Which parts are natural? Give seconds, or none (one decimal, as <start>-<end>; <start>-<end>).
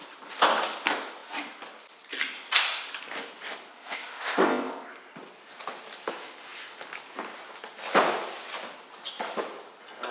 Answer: 0.0-3.7; 4.9-10.1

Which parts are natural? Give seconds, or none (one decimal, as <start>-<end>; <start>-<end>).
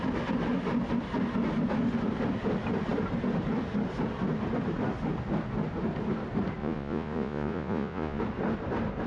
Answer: 0.0-6.6; 8.2-9.1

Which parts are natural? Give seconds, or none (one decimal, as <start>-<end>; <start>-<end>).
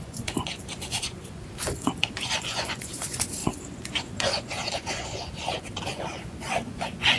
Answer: none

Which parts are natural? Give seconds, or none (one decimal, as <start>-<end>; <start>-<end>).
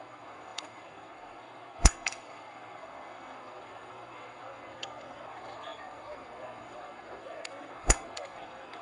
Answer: none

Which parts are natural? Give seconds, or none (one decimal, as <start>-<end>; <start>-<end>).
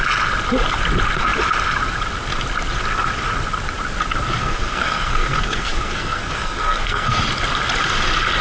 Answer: 0.0-4.4; 7.2-8.4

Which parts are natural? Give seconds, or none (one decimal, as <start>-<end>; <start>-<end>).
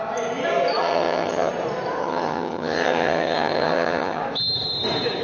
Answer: 0.0-0.8; 1.5-2.0; 4.2-5.2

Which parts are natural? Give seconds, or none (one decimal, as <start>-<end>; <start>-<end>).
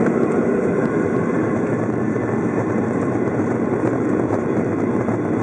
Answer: none